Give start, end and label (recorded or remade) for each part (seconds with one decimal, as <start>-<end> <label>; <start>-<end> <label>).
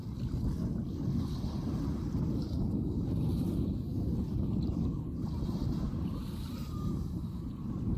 0.0-1.5 recorded; 1.5-3.5 remade; 3.5-4.5 recorded; 4.5-8.0 remade